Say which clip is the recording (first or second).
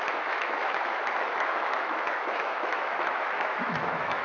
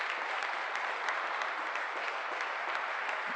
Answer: second